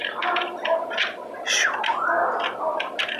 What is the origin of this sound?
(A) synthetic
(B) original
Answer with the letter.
B